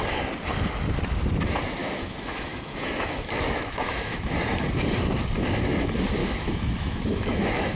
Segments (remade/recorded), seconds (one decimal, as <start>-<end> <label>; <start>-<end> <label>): 0.0-1.8 recorded; 1.8-4.4 remade; 4.4-6.2 recorded; 6.2-7.8 remade